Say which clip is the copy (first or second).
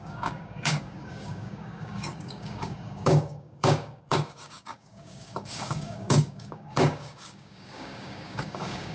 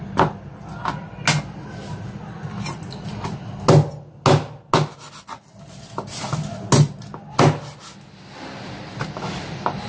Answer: first